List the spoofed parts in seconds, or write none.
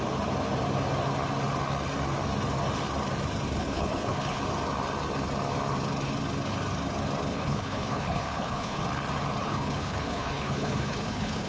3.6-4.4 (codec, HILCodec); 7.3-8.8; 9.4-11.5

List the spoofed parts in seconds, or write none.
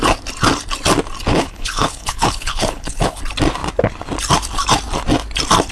1.3-3.2 (codec, HILCodec)